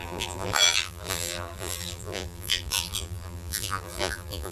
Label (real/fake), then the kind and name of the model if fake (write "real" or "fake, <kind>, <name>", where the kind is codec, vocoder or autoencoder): fake, vocoder, BigVGAN v2